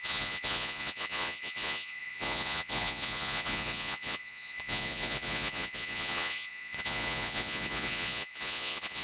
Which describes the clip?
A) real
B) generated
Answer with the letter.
B